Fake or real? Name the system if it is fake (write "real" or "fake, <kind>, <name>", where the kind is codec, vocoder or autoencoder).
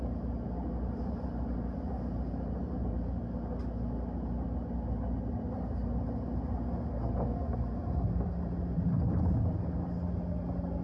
real